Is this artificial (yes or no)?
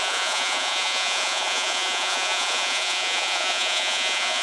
yes